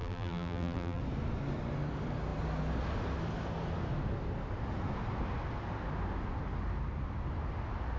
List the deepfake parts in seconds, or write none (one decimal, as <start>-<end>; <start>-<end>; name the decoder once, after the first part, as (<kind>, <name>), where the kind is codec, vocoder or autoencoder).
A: 0.0-1.0 (vocoder, BigVGAN v2)